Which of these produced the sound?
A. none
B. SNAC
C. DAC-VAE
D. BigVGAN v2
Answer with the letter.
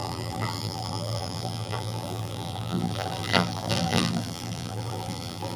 D